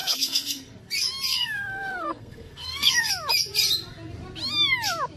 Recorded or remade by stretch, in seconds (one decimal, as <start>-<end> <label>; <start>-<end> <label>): 0.0-0.8 remade; 0.8-1.3 recorded; 1.3-3.1 remade; 3.1-5.2 recorded